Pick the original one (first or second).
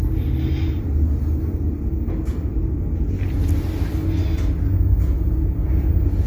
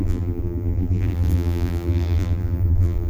first